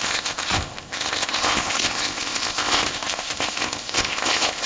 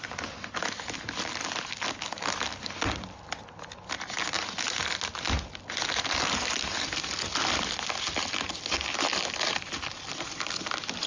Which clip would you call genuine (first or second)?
second